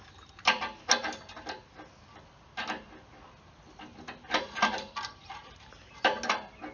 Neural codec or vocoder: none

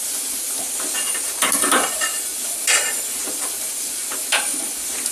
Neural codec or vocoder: none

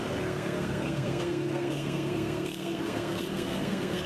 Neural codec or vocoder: codec, SNAC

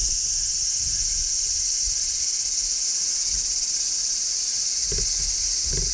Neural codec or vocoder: none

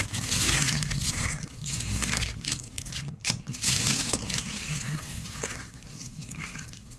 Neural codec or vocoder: codec, SNAC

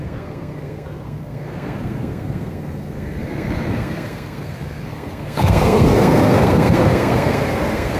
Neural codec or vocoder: codec, SNAC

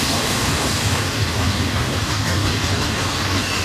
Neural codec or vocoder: codec, DAC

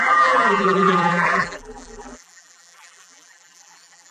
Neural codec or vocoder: vocoder, BigVGAN v2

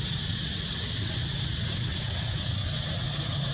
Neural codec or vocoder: vocoder, WaveNeXt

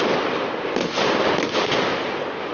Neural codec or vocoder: none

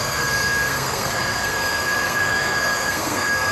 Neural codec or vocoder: codec, SNAC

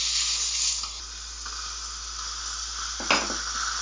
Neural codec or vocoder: none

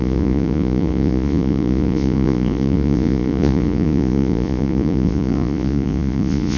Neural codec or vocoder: vocoder, Vocos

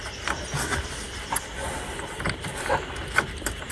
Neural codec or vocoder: none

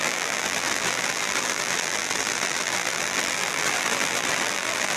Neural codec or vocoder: vocoder, BigVGAN v2